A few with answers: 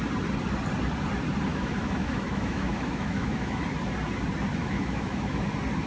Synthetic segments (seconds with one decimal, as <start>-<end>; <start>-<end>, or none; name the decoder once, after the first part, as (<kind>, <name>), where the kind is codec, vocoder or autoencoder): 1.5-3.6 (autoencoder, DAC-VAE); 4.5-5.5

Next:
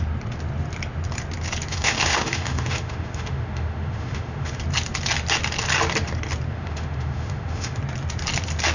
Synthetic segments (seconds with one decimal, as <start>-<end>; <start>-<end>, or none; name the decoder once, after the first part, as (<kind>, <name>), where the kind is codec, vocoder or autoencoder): 1.7-4.6 (autoencoder, DAC-VAE); 6.5-7.8

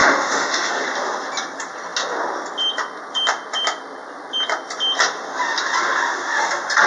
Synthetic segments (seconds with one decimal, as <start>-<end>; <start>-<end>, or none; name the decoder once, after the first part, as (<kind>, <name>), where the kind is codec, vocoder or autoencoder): 0.0-0.7 (autoencoder, DAC-VAE)

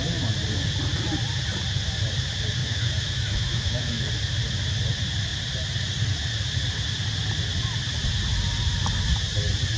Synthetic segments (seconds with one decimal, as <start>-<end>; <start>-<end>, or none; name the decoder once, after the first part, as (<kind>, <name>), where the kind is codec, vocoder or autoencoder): 2.6-4.1 (autoencoder, DAC-VAE)

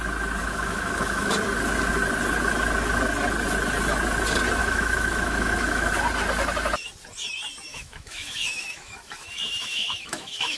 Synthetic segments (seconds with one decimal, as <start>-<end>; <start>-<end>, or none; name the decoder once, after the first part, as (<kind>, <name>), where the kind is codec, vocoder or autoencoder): 0.4-1.3 (autoencoder, DAC-VAE); 4.6-5.9; 7.7-10.6

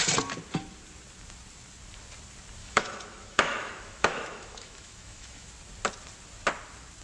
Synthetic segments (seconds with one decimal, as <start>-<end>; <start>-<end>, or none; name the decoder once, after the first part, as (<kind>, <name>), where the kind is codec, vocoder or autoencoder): 2.6-5.5 (autoencoder, DAC-VAE)

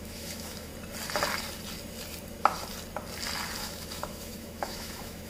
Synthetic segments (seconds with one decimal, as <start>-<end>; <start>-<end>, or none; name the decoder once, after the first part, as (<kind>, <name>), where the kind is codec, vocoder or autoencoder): 0.0-0.7 (autoencoder, DAC-VAE); 3.6-5.3